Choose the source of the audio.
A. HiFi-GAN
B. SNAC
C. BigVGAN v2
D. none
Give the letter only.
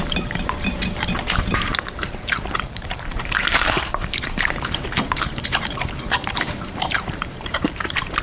C